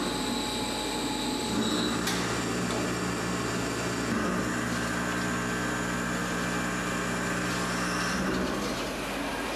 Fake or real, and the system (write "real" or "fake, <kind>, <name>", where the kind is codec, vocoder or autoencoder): real